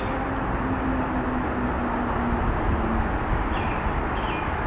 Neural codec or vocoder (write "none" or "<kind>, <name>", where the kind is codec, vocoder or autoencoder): none